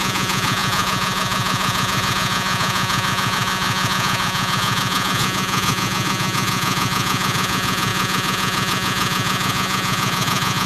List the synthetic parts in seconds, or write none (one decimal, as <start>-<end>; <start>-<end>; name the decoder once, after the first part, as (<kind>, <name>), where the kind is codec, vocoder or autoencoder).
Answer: 0.0-10.7 (vocoder, Vocos)